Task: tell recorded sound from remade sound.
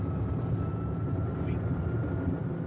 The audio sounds recorded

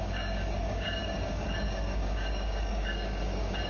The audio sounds remade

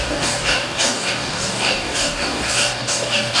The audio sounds remade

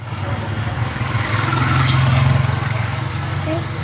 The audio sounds remade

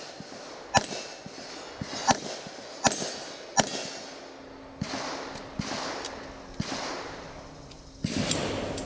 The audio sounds recorded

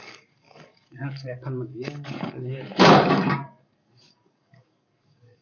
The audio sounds remade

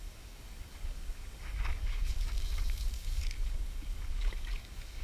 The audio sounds remade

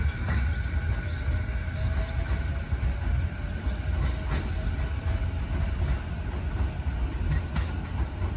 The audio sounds recorded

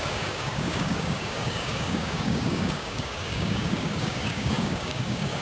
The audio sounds remade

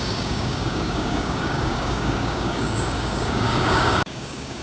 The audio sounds remade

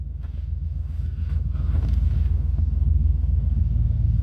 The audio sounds remade